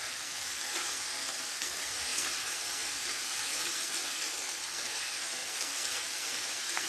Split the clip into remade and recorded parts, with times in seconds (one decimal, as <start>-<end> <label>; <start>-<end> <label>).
0.0-6.9 remade